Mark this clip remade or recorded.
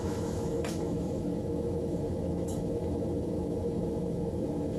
remade